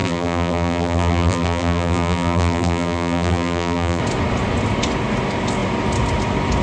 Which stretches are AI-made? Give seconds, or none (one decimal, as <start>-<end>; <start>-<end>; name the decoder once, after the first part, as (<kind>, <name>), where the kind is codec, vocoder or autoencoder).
0.0-4.0 (vocoder, BigVGAN v2)